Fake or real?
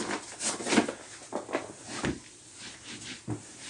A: real